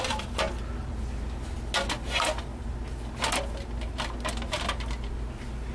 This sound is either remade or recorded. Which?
recorded